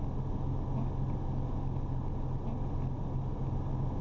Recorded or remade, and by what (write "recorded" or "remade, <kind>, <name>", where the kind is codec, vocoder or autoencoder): recorded